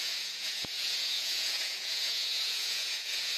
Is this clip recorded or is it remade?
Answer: remade